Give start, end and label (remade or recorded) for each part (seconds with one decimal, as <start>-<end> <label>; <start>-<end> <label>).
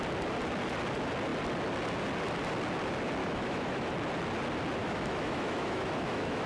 0.0-3.2 recorded; 3.2-3.9 remade; 3.9-4.8 recorded; 4.8-6.5 remade